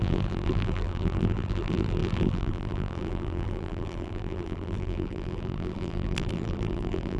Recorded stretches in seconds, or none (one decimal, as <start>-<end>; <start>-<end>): none